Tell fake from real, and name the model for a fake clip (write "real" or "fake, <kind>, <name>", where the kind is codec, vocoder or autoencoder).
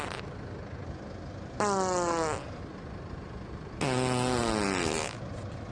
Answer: real